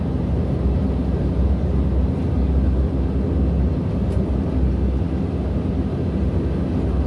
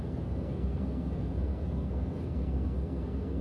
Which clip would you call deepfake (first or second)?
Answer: second